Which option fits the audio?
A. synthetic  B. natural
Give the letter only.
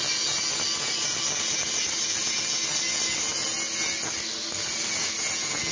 B